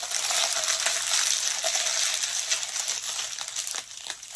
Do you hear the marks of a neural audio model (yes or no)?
no